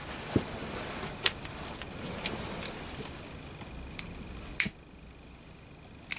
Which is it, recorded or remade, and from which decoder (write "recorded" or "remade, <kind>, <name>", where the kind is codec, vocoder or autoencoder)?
recorded